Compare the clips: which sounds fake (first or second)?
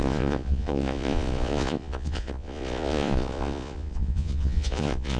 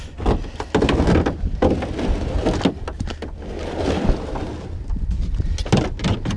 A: first